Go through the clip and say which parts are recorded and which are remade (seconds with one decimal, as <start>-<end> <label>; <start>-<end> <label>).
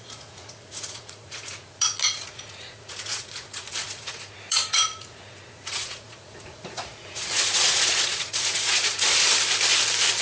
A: 0.0-9.3 remade; 9.3-10.2 recorded